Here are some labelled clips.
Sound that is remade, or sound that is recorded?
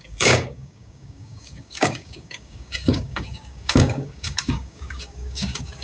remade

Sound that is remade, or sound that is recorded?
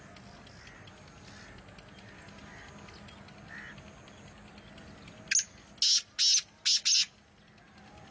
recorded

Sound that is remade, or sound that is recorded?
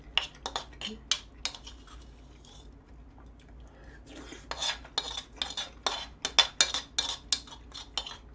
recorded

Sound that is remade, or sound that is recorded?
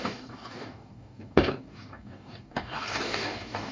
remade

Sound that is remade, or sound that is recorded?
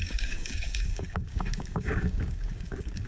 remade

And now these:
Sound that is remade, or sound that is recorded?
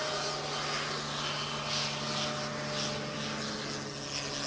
recorded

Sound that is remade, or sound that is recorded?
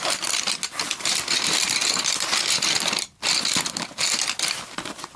recorded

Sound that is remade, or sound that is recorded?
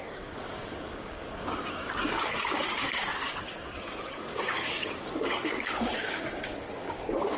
remade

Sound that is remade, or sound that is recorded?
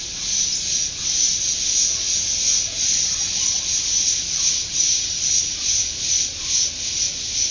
recorded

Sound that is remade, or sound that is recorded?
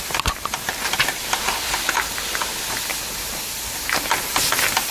recorded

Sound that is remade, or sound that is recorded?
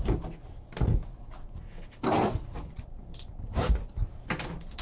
recorded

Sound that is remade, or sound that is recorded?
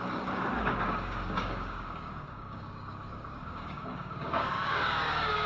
remade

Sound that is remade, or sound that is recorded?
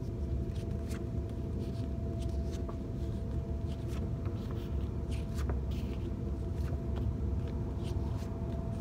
recorded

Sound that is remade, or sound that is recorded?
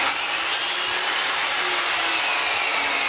recorded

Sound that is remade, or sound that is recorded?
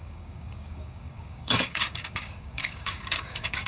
remade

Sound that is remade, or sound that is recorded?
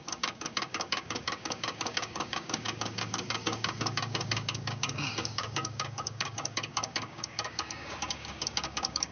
remade